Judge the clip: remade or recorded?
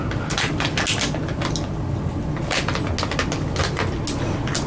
recorded